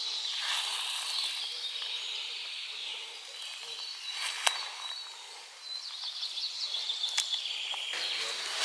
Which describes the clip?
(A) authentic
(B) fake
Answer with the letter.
A